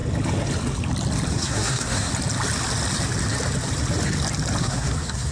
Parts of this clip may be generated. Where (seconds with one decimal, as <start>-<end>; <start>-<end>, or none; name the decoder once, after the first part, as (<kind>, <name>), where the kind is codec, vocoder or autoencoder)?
1.3-2.1 (codec, SNAC); 4.6-5.3